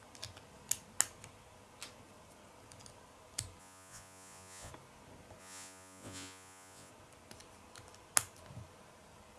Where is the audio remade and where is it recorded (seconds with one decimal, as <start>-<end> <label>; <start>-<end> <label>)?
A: 0.0-3.6 recorded; 3.6-4.7 remade; 4.7-5.4 recorded; 5.4-6.9 remade; 6.9-9.4 recorded